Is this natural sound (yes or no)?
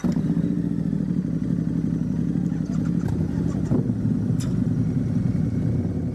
yes